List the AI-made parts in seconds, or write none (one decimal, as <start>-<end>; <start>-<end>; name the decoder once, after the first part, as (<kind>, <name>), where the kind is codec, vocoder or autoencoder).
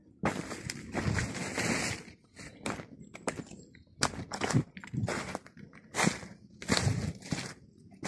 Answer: none